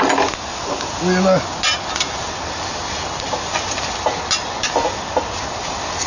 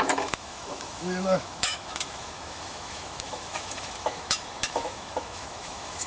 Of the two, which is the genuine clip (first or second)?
first